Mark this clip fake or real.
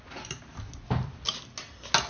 real